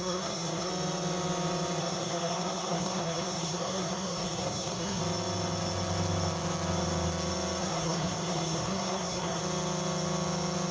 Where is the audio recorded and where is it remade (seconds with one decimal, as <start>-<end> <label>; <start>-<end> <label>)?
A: 0.0-0.7 remade; 0.7-1.8 recorded; 1.8-5.0 remade; 5.0-7.6 recorded; 7.6-9.4 remade; 9.4-10.7 recorded